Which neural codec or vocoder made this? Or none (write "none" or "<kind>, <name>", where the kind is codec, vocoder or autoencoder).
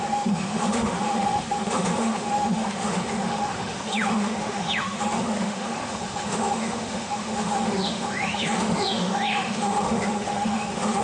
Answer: autoencoder, DAC-VAE